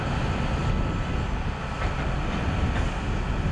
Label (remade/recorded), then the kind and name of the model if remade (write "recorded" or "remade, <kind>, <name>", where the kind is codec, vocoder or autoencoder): recorded